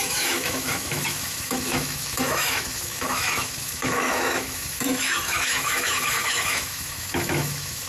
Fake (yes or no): yes